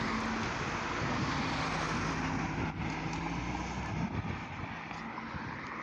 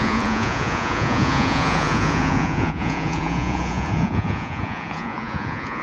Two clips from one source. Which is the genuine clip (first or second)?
first